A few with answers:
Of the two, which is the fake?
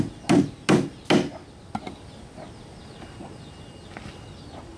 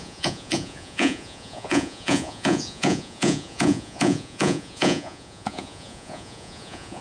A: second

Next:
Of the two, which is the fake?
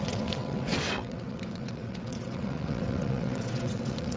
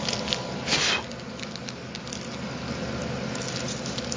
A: first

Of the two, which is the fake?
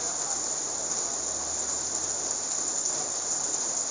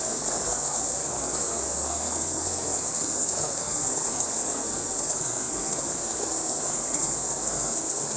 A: second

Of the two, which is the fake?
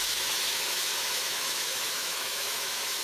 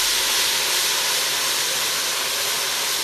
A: first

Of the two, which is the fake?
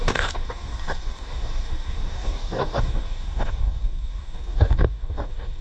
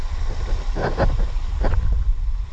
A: first